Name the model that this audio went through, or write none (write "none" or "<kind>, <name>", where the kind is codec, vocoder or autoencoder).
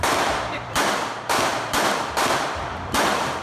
vocoder, BigVGAN v2